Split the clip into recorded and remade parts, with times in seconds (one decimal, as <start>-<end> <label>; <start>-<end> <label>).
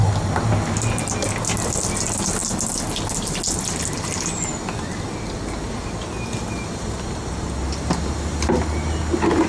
0.0-9.5 recorded